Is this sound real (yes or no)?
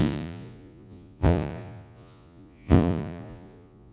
no